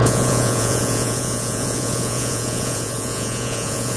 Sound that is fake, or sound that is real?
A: fake